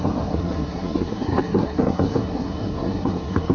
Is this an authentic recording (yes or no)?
no